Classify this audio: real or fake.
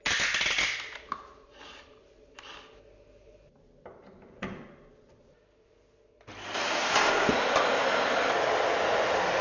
real